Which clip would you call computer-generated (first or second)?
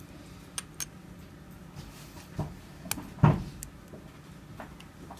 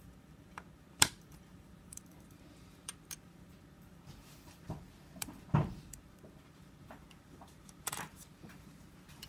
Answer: second